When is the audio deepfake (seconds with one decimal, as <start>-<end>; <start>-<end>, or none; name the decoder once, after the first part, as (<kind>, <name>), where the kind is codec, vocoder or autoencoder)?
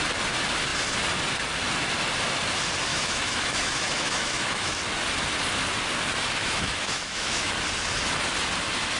2.9-4.8 (autoencoder, DAC-VAE); 6.4-7.5